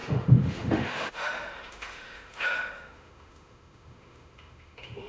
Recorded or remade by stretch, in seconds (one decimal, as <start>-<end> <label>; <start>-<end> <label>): 0.0-5.1 remade